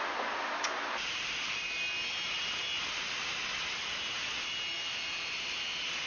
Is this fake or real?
real